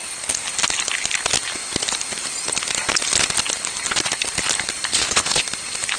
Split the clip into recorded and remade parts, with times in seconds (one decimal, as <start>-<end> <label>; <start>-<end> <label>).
0.0-4.9 recorded; 4.9-5.4 remade; 5.4-6.0 recorded